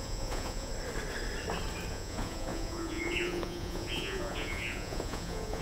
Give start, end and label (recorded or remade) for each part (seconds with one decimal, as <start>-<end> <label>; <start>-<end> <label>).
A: 0.0-0.7 remade; 0.7-1.9 recorded; 1.9-5.6 remade